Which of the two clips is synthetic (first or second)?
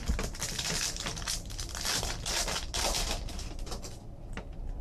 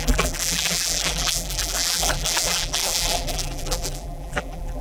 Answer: second